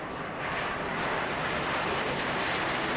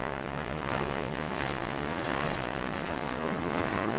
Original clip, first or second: first